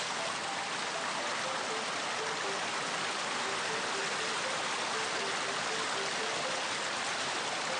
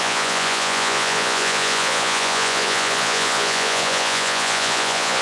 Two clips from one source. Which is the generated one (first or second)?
second